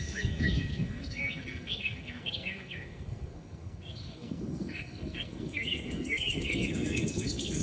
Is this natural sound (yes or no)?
no